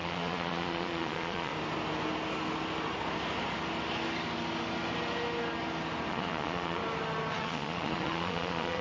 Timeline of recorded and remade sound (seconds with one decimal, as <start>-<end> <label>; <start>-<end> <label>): 0.0-1.5 remade; 1.5-6.1 recorded; 6.1-6.8 remade; 6.8-7.3 recorded; 7.3-8.8 remade